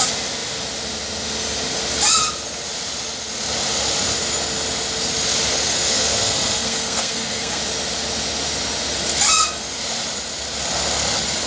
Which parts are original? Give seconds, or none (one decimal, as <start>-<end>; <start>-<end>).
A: 0.0-5.7; 7.6-11.5